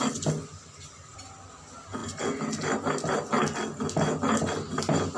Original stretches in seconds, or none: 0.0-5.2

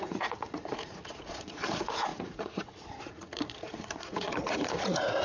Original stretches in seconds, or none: none

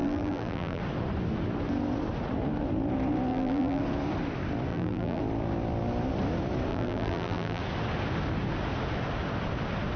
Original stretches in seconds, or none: 0.8-3.3; 3.8-4.7; 5.2-6.7; 7.6-10.0